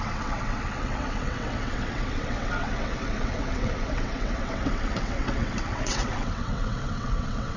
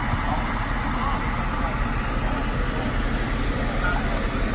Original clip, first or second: second